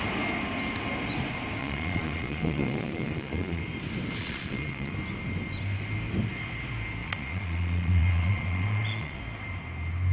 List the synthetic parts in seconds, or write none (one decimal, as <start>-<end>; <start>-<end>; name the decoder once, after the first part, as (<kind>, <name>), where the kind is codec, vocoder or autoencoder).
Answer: 1.6-3.6 (vocoder, Vocos); 4.2-4.9; 7.0-9.2